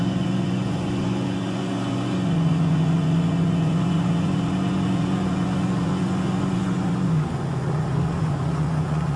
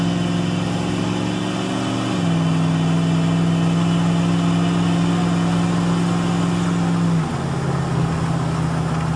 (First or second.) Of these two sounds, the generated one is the first